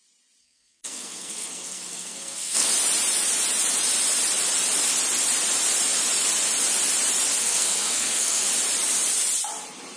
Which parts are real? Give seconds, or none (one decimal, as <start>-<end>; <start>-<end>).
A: 0.0-0.4; 2.7-7.4; 8.5-10.0